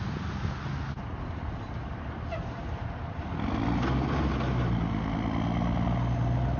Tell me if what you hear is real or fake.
real